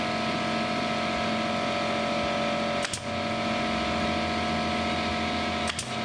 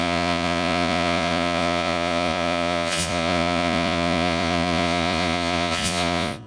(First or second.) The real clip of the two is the first